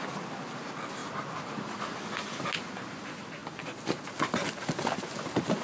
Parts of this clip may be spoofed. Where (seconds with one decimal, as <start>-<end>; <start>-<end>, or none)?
none